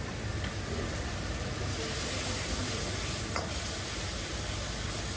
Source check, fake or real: real